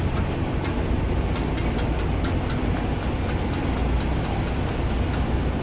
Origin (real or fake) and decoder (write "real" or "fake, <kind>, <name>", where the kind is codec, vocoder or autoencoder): real